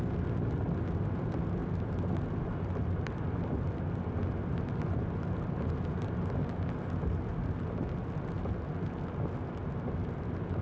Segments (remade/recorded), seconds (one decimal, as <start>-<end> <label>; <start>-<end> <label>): 0.0-10.6 recorded